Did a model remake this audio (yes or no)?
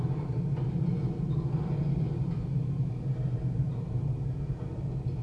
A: no